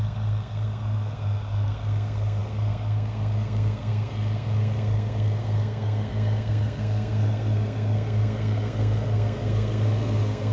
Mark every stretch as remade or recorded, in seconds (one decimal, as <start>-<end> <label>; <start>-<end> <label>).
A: 0.0-10.5 remade